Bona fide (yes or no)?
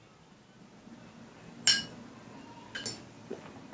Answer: yes